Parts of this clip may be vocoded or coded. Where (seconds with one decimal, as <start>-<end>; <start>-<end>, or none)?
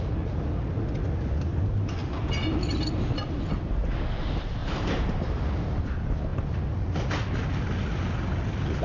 4.6-5.4